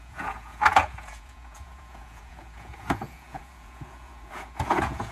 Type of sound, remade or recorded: remade